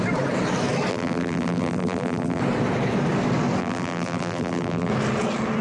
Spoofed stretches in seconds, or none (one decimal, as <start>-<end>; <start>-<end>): 0.9-2.4; 3.6-4.9